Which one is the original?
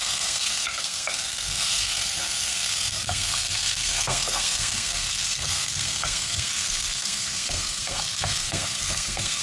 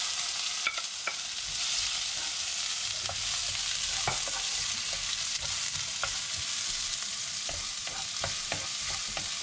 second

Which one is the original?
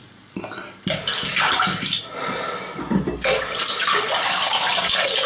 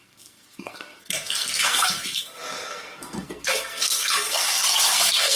first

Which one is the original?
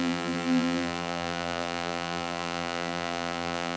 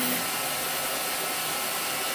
second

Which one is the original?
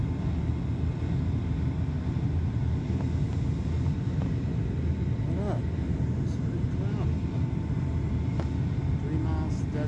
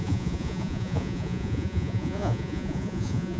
first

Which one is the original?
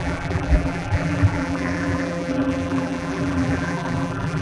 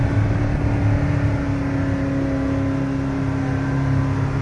second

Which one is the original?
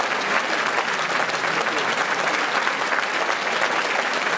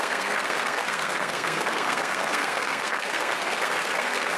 first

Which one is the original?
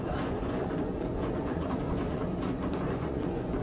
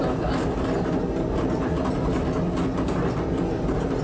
second